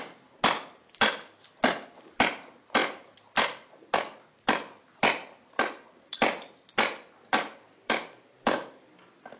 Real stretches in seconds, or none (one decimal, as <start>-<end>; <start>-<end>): 0.0-9.4